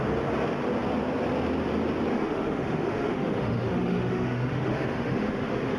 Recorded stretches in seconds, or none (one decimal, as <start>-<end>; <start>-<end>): 0.0-2.1